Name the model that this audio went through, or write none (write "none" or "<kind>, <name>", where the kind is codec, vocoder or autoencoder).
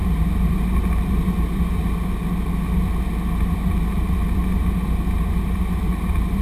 none